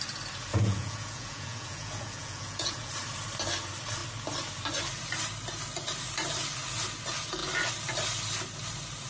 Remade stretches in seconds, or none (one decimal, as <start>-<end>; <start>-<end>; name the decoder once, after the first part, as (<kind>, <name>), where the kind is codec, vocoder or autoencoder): 0.5-2.9 (vocoder, Vocos)